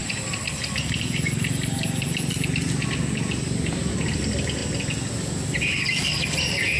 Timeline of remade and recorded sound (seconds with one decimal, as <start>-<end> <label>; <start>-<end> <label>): 0.0-6.8 recorded